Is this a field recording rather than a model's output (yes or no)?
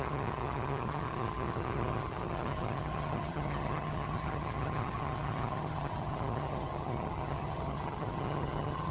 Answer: no